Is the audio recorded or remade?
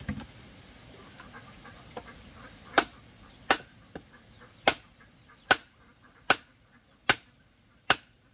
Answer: recorded